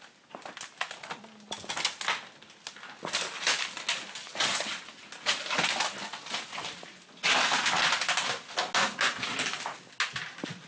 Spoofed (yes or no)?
no